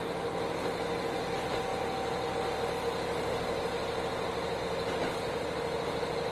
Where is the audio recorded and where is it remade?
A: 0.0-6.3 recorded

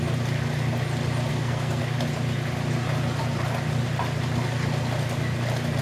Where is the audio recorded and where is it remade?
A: 0.0-1.3 recorded; 1.3-1.8 remade; 1.8-5.8 recorded

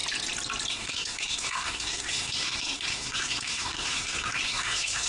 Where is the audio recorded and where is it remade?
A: 0.0-0.7 recorded; 0.7-5.1 remade